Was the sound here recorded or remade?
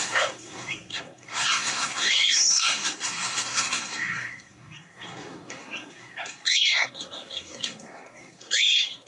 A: remade